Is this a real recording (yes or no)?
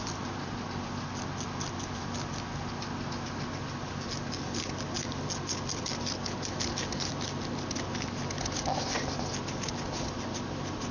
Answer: yes